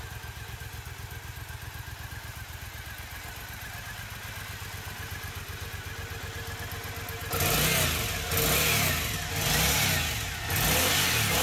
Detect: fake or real real